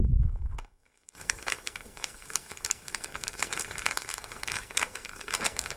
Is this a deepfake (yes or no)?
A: yes